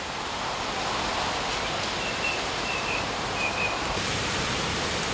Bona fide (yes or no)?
yes